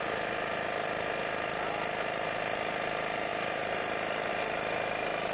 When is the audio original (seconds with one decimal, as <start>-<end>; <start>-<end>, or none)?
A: 0.0-5.3